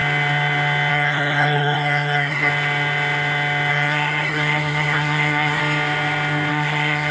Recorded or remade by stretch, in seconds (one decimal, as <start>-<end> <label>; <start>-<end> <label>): 0.0-0.9 recorded; 0.9-2.5 remade; 2.5-3.7 recorded; 3.7-5.6 remade; 5.6-6.5 recorded; 6.5-7.1 remade